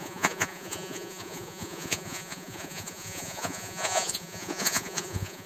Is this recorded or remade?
remade